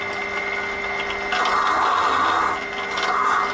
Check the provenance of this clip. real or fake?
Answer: real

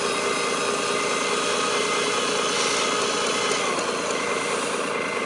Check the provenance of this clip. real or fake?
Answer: real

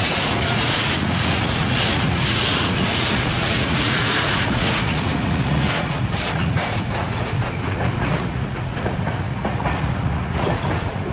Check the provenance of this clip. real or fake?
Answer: fake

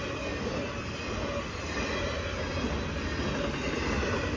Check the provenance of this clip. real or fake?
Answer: real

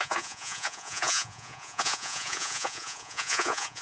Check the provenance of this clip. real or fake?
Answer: fake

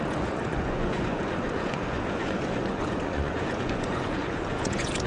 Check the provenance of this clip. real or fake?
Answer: fake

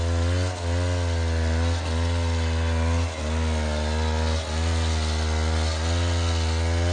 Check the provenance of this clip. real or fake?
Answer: real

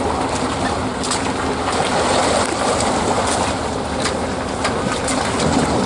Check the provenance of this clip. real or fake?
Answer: real